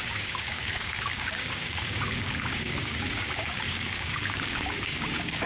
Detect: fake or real fake